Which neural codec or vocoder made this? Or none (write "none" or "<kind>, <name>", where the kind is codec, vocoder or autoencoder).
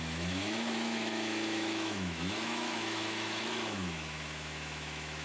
autoencoder, DAC-VAE